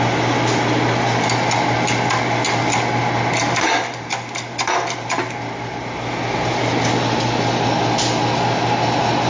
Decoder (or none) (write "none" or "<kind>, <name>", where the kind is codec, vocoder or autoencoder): none